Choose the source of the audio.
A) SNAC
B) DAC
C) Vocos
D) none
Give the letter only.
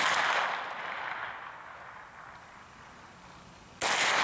D